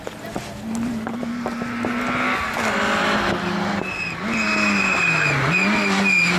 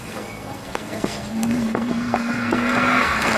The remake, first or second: second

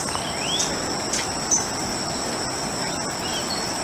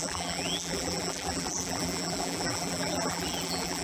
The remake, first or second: second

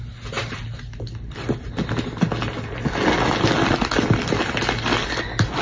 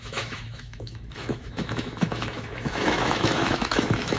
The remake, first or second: second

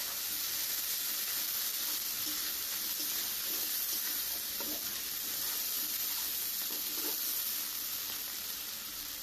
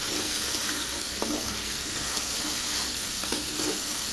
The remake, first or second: second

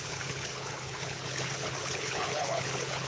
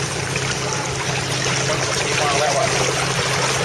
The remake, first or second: first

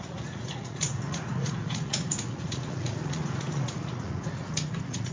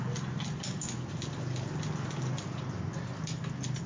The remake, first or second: first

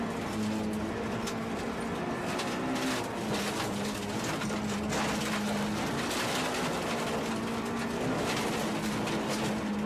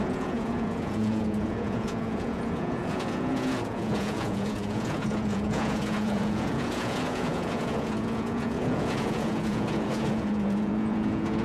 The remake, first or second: second